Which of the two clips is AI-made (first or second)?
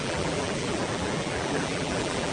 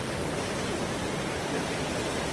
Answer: first